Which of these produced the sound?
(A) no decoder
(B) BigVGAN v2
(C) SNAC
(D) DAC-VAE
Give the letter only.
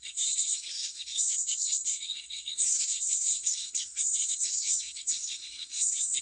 C